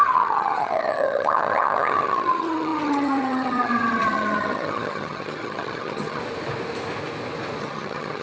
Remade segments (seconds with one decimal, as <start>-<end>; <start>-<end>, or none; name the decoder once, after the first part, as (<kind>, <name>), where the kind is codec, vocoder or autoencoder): 0.0-6.2 (vocoder, HiFi-GAN); 7.6-8.2